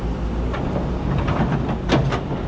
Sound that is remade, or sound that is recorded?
recorded